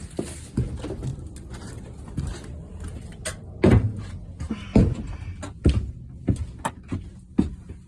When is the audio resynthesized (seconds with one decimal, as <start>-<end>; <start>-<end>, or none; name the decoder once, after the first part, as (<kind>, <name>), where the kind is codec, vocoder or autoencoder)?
none